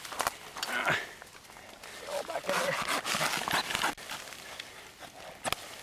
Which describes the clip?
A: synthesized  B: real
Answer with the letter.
B